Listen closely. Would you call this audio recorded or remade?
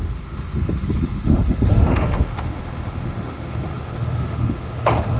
remade